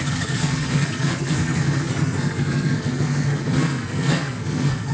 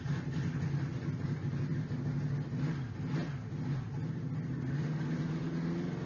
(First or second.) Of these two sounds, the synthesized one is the first